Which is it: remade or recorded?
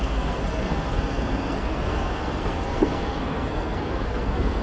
remade